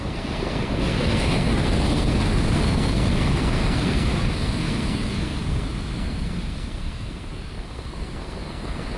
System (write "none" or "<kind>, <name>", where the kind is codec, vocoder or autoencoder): codec, SNAC